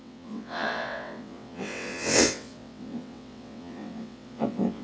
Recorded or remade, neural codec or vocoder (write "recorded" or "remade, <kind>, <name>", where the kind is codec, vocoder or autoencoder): remade, vocoder, WaveNeXt